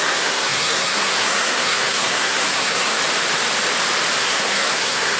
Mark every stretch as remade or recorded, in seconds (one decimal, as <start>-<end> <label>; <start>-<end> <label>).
0.0-3.0 remade; 3.0-4.2 recorded; 4.2-5.2 remade

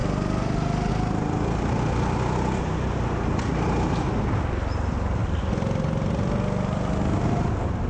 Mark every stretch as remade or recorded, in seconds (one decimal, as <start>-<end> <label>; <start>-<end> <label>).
0.0-7.9 recorded

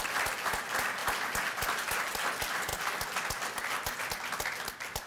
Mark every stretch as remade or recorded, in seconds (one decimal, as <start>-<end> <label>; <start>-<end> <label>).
0.0-5.1 recorded

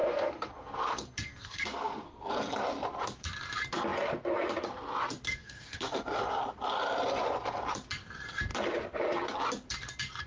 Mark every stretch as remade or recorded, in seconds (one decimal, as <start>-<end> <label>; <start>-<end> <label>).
0.0-2.3 remade; 2.3-5.4 recorded; 5.4-6.4 remade; 6.4-10.3 recorded